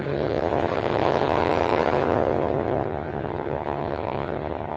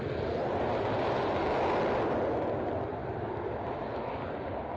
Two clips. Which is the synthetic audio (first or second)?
first